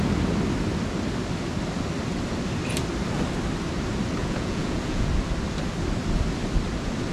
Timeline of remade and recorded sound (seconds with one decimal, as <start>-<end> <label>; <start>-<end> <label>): 0.0-4.2 recorded; 4.2-5.1 remade; 5.1-7.1 recorded